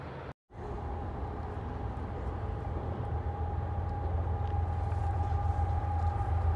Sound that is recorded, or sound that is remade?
recorded